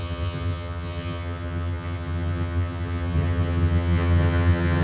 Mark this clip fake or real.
fake